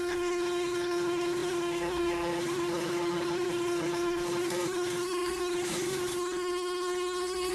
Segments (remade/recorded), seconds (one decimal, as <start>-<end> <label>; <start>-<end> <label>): 0.0-7.5 remade